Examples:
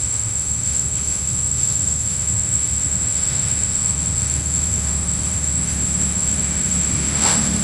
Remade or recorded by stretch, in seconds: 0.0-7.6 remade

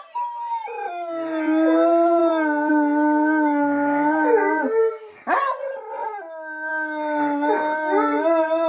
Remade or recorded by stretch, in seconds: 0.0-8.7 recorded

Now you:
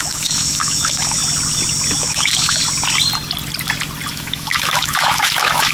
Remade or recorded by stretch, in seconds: 0.0-1.2 remade; 1.2-2.0 recorded; 2.0-2.6 remade; 2.6-4.1 recorded; 4.1-5.7 remade

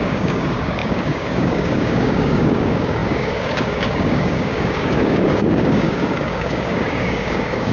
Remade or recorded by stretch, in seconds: 0.0-7.7 remade

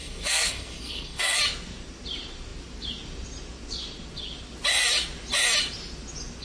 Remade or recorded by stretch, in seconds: 0.0-1.4 remade; 1.4-6.4 recorded

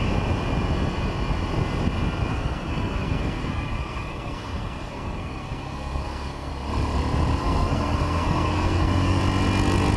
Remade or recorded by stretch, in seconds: 0.0-2.3 recorded; 2.3-6.5 remade; 6.5-7.4 recorded; 7.4-9.2 remade; 9.2-10.0 recorded